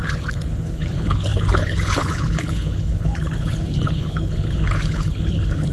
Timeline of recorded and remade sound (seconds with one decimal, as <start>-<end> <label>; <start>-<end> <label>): 0.0-5.7 remade